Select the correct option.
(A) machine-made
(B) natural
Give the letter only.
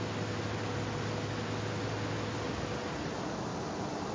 B